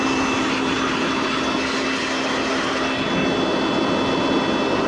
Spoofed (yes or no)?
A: no